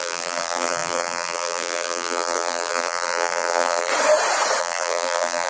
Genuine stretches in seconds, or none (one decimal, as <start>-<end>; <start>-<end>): 3.9-4.6